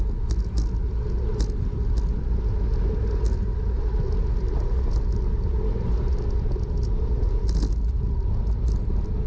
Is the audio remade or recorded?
recorded